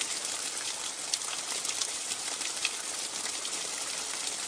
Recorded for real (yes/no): yes